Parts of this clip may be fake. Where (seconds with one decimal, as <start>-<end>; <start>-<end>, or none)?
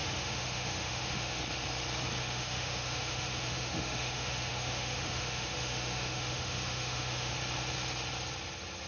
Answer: 0.0-1.4; 2.2-7.3